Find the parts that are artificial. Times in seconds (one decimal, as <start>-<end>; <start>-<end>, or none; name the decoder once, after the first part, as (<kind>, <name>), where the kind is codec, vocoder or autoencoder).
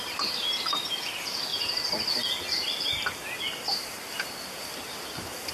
none